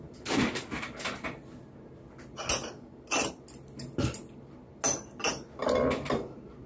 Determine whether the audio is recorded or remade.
recorded